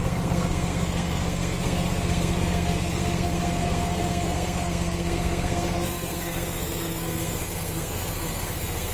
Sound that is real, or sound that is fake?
fake